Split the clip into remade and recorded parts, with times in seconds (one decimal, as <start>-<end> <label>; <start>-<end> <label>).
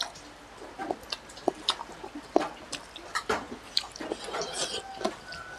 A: 0.0-5.6 recorded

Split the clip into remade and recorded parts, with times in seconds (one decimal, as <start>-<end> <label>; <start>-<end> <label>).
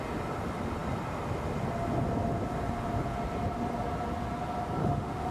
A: 0.0-4.8 recorded; 4.8-5.3 remade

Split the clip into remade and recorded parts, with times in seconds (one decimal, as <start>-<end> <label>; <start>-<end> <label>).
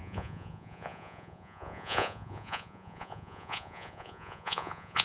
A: 0.0-5.0 remade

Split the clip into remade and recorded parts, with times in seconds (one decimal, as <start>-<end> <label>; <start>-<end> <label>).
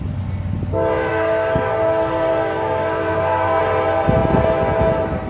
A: 0.0-1.1 recorded; 1.1-3.6 remade; 3.6-5.3 recorded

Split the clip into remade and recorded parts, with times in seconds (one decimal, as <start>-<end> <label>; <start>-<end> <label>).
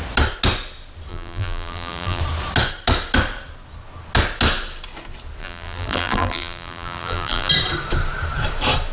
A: 0.0-1.1 recorded; 1.1-2.2 remade; 2.2-5.4 recorded; 5.4-7.5 remade; 7.5-8.9 recorded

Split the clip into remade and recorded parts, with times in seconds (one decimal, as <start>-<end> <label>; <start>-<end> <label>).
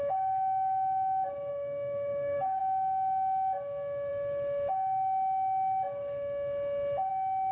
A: 0.0-1.5 recorded; 1.5-2.6 remade; 2.6-7.5 recorded